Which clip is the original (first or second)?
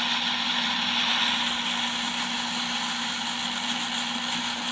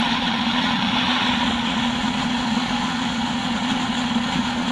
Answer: first